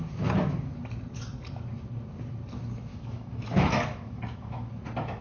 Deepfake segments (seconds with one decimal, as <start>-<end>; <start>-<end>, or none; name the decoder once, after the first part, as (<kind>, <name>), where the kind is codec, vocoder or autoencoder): 2.9-4.7 (autoencoder, DAC-VAE)